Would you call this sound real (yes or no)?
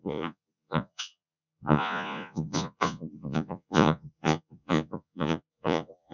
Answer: no